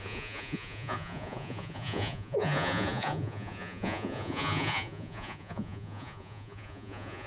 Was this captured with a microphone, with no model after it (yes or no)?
no